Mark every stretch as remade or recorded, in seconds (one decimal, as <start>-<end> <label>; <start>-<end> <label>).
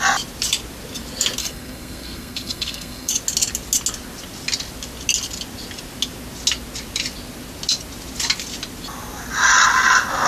0.0-1.4 recorded; 1.4-3.1 remade; 3.1-10.3 recorded